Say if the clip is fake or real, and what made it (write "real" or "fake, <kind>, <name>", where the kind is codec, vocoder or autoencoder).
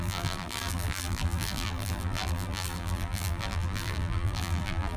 fake, vocoder, BigVGAN v2